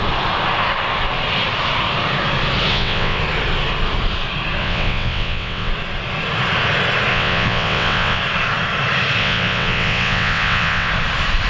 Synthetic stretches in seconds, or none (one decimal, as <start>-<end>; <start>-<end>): 2.7-3.2; 4.6-5.7; 7.1-8.2; 9.2-10.9

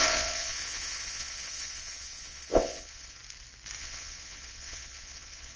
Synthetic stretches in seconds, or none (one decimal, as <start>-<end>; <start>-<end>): 0.0-3.2; 3.8-5.6

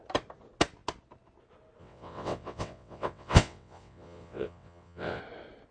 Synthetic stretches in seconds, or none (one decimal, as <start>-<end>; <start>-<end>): 1.8-5.2

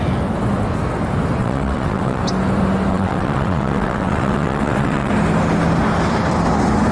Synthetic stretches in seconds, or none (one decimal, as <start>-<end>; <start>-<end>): 1.4-2.2; 2.9-5.1